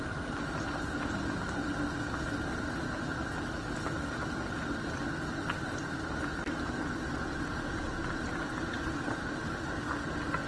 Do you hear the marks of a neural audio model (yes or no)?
no